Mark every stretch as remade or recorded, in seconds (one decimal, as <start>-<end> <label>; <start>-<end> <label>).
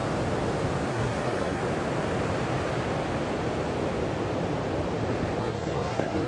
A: 0.0-0.9 recorded; 0.9-1.6 remade; 1.6-5.4 recorded; 5.4-6.3 remade